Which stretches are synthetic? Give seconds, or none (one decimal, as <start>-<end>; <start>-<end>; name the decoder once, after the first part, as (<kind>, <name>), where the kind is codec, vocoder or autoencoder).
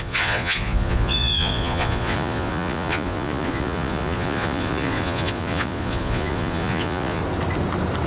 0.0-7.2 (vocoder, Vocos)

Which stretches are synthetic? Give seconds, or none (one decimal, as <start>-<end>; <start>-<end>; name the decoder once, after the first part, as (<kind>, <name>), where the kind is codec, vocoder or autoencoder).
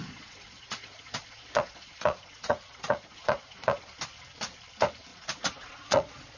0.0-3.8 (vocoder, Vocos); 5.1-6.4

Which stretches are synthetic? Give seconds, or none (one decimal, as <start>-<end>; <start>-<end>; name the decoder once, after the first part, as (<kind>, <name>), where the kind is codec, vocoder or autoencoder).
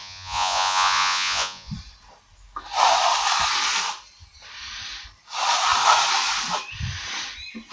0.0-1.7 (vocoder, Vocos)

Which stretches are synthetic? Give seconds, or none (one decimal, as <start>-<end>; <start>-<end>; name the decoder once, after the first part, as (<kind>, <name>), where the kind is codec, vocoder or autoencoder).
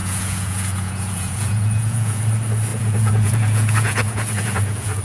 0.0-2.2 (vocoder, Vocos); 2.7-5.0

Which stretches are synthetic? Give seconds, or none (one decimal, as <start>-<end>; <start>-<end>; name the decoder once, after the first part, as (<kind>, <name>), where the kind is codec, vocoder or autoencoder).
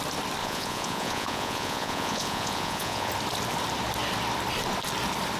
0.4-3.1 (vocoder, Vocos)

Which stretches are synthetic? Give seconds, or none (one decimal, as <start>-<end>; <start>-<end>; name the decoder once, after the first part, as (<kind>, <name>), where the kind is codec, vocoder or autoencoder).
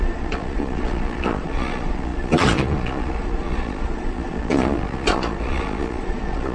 0.0-6.5 (vocoder, Vocos)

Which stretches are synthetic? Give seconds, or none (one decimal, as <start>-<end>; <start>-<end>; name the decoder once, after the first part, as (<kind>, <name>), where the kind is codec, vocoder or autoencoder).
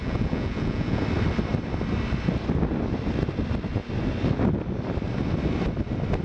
0.0-1.0 (vocoder, Vocos)